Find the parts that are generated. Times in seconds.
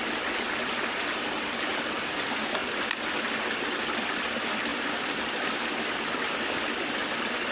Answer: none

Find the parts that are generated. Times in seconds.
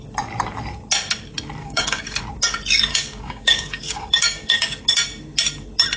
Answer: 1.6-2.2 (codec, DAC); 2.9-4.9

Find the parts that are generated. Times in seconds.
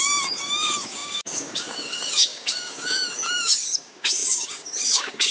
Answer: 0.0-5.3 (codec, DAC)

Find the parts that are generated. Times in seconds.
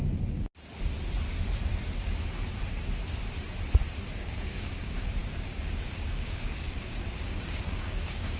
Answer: 0.0-0.5 (codec, DAC); 4.2-8.4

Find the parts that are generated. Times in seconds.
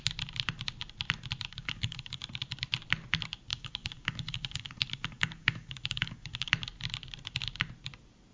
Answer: 1.5-2.2 (codec, DAC); 3.5-6.5